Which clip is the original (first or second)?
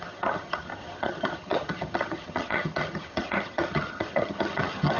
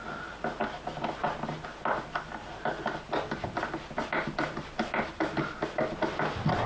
second